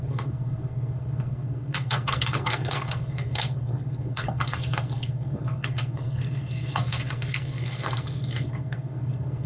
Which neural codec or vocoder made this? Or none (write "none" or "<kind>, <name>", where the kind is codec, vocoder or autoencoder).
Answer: codec, SNAC